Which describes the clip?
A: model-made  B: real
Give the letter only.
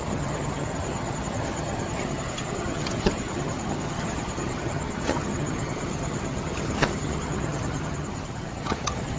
A